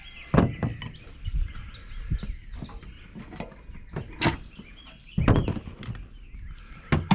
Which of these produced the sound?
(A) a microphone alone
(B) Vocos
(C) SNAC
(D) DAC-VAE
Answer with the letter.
A